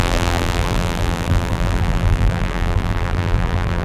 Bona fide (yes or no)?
no